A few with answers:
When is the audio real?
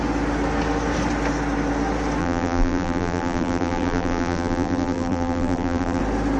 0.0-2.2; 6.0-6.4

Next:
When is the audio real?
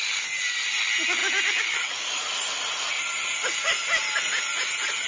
0.0-5.1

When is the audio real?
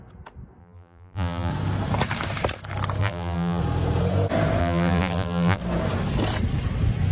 0.0-0.6; 1.5-3.0; 3.6-4.6; 5.6-7.1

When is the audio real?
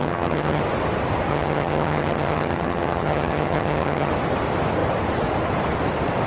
0.6-1.3; 4.1-6.3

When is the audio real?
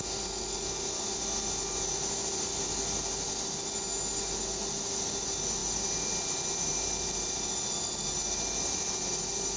0.0-9.6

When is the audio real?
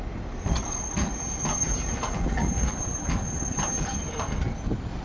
0.0-1.0; 4.0-5.0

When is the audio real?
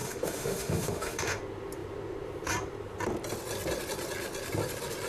1.4-5.1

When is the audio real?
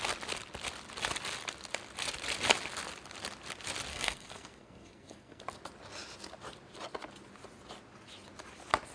0.0-3.9; 5.4-8.9